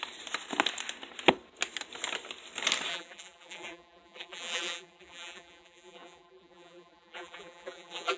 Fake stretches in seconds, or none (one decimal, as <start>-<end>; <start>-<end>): 2.9-8.2